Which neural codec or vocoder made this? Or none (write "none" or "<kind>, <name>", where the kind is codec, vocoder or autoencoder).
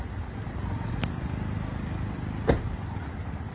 none